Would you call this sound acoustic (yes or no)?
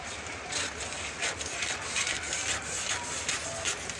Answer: yes